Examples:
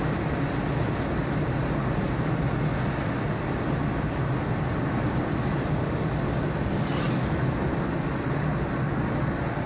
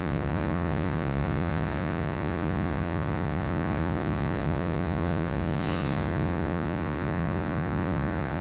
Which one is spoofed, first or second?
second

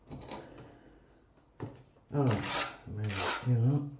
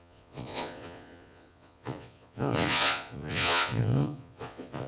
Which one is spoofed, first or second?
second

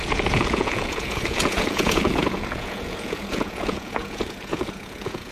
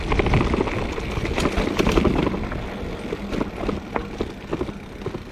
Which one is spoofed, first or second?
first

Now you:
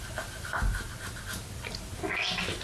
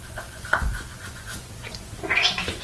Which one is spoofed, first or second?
second